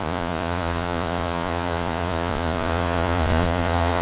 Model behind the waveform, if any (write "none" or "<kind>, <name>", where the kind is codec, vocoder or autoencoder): vocoder, Vocos